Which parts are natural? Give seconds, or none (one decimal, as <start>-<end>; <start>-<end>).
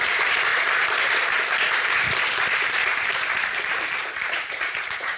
none